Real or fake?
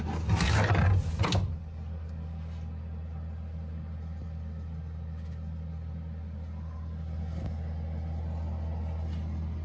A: real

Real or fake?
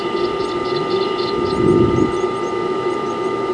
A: real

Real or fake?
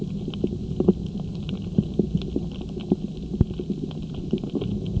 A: real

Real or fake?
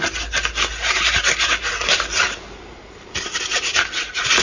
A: real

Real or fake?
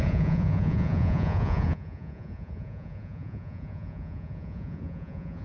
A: fake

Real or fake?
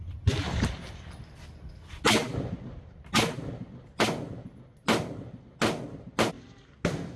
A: real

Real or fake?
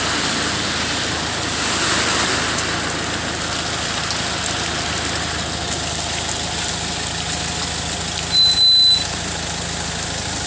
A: real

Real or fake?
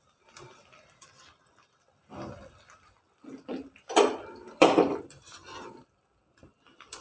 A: fake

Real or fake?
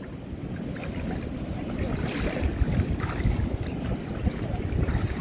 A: real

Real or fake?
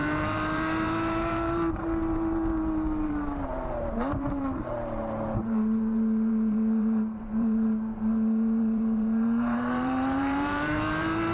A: fake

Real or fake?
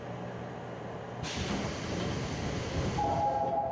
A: real